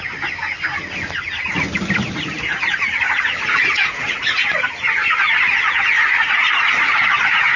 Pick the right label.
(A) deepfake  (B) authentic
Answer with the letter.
B